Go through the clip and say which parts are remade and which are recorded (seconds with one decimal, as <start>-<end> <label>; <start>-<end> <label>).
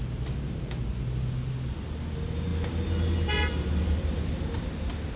0.0-5.2 recorded